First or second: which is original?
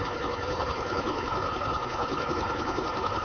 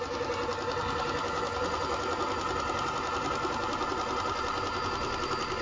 second